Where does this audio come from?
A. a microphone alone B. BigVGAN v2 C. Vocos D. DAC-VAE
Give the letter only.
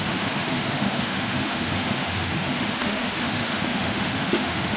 D